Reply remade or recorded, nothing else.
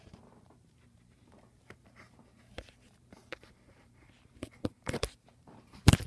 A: remade